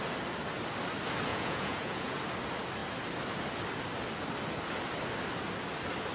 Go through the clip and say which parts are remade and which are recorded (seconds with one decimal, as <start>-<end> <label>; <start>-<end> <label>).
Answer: 0.0-1.3 recorded; 1.3-2.2 remade; 2.2-6.1 recorded